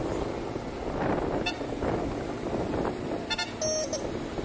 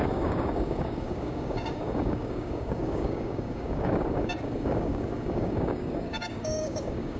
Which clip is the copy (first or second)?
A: second